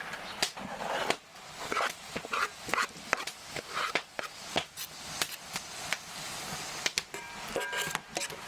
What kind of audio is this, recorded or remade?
recorded